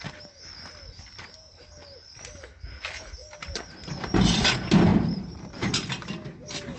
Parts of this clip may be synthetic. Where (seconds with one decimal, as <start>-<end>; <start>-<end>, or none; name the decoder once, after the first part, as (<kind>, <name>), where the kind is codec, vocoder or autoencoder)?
3.2-4.5 (vocoder, BigVGAN v2); 4.9-5.7